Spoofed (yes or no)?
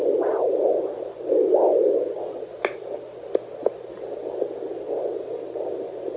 no